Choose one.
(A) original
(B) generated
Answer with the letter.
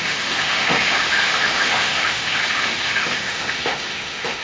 B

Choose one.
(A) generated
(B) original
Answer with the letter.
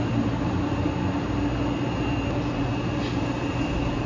B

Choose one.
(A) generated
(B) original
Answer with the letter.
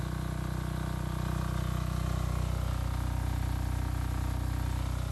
B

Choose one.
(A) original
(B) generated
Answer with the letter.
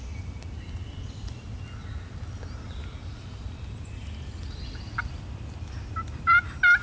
A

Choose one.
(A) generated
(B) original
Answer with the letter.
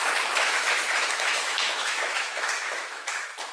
A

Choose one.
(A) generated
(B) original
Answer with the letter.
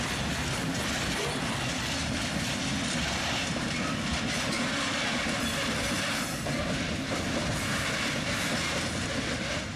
B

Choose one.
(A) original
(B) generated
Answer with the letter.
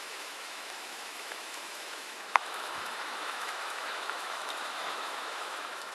B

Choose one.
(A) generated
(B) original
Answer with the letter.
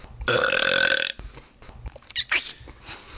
B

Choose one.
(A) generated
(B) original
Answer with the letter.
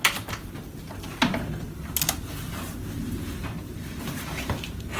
B